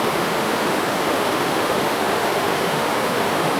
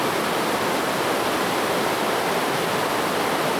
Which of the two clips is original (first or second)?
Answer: second